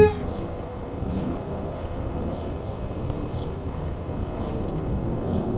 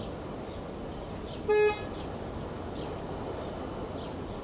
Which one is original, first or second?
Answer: second